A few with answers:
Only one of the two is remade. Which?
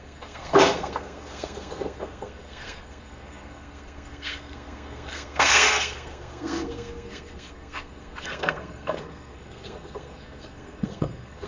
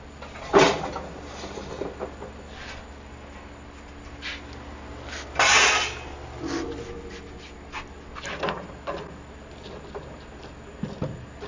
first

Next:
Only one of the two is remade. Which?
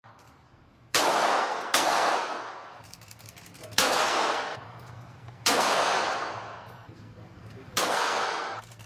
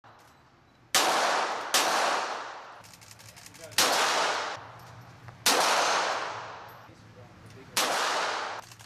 first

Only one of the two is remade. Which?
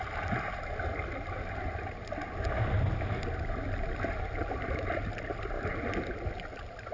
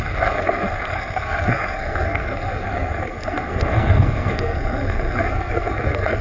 second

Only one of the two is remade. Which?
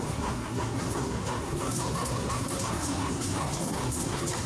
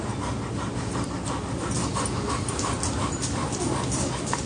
first